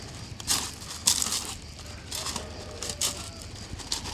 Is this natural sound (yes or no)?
yes